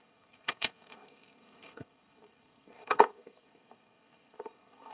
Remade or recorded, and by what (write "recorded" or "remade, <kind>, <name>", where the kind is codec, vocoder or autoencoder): remade, codec, SNAC